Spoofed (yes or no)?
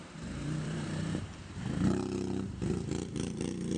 yes